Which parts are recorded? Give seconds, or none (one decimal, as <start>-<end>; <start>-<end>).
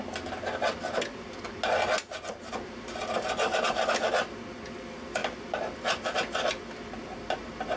0.0-7.8